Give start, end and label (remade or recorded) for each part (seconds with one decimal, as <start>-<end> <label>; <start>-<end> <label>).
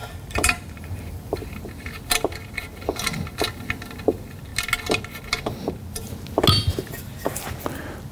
0.0-1.5 remade; 1.5-8.1 recorded